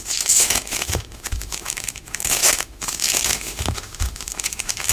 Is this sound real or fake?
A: fake